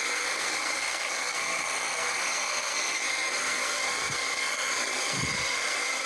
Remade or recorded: remade